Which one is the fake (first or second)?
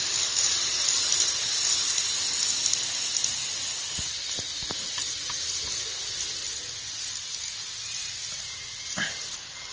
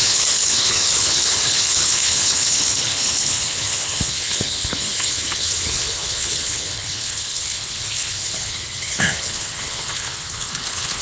second